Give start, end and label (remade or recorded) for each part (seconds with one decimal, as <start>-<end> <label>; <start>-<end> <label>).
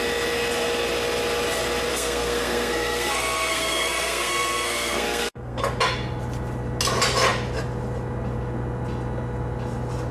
0.0-1.9 recorded; 1.9-5.6 remade; 5.6-10.1 recorded